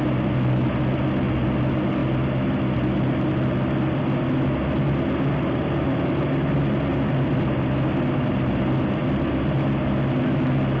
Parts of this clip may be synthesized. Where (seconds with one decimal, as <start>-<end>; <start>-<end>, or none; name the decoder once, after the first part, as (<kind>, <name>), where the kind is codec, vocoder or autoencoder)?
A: none